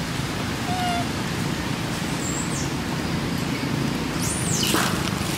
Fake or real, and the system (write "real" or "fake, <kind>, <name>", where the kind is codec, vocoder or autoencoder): real